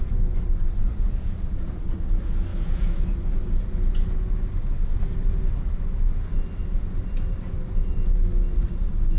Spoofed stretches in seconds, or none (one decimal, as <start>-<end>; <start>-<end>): 2.5-3.0